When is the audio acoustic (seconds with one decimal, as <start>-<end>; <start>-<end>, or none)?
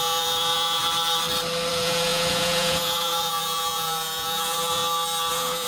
0.8-1.7; 4.8-5.3